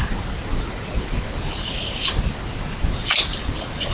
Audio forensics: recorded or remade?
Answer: recorded